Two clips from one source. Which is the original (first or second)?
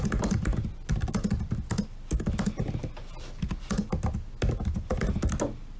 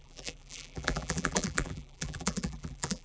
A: first